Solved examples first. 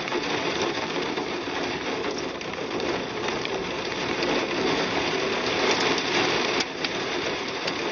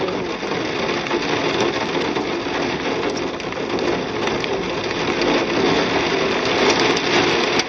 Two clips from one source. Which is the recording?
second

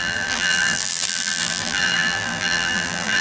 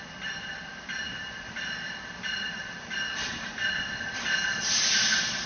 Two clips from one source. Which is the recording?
second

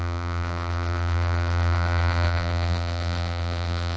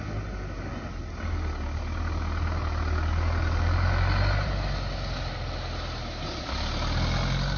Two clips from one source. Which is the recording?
second